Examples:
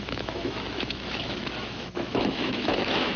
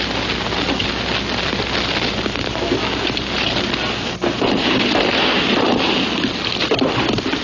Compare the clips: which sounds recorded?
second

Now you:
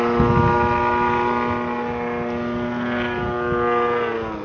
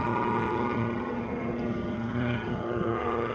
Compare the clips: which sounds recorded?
first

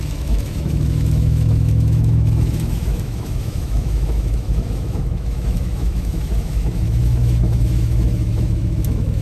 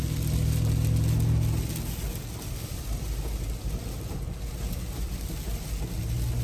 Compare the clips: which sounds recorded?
second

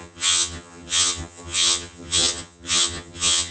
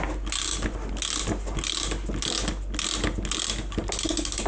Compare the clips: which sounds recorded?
second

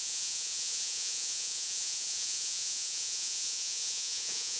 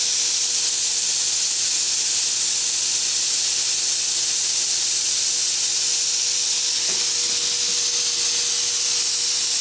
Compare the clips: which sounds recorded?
second